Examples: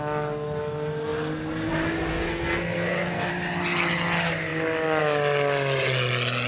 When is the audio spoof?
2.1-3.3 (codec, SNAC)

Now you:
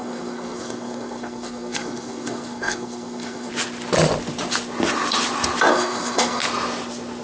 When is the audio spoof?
0.0-3.5 (codec, SNAC); 5.7-6.4